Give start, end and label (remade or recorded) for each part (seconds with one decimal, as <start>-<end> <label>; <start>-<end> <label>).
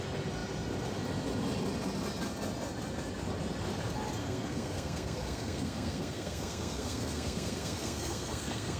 0.0-4.2 recorded; 4.2-8.8 remade